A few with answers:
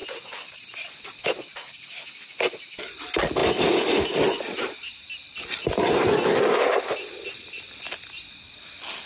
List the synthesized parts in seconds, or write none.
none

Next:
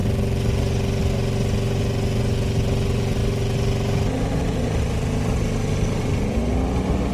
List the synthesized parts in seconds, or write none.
none

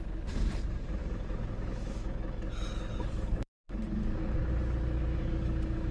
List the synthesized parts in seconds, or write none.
1.0-4.5 (codec, DAC); 5.1-5.9

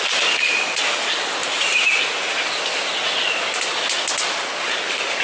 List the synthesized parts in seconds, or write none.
none

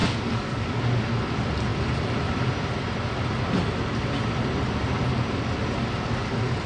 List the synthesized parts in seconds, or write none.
0.0-0.8 (codec, DAC)

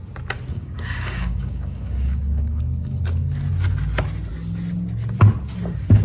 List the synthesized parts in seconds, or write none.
0.5-3.0 (codec, DAC)